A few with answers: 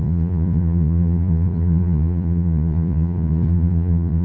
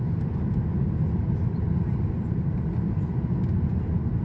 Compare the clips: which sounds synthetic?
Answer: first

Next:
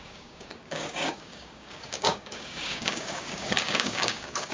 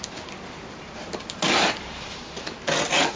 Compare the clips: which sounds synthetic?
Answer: first